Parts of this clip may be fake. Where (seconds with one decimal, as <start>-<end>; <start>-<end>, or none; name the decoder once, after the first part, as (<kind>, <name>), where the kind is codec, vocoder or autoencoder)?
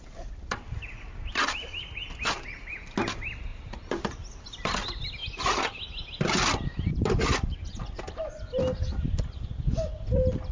none